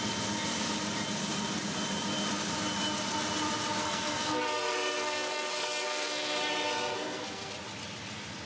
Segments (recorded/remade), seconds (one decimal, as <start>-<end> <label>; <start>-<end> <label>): 0.0-3.8 recorded; 3.8-7.5 remade; 7.5-8.5 recorded